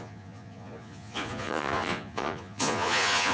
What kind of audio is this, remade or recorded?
remade